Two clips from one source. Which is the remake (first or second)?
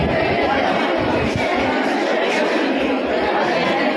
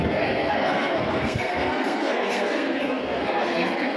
second